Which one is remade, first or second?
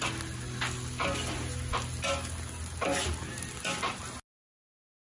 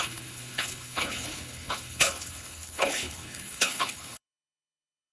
second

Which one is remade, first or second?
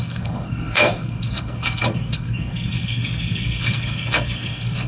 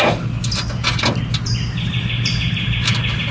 first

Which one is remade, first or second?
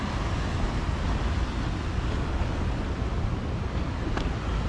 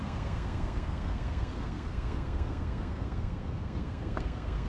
second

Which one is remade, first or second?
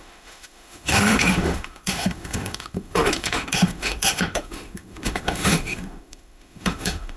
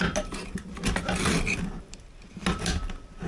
first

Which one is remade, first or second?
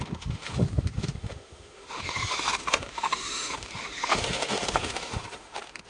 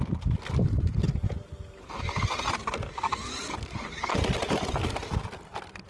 first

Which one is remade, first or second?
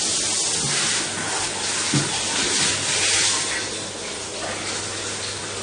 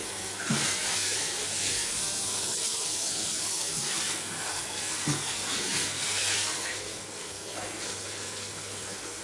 second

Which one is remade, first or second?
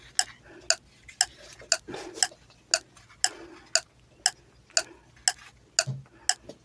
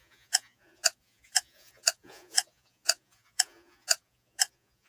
second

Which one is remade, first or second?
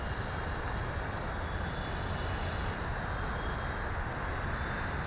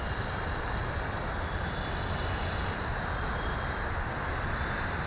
second